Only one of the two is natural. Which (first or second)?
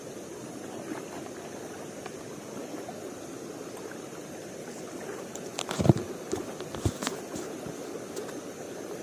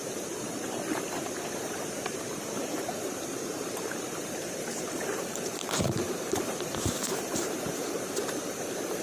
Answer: first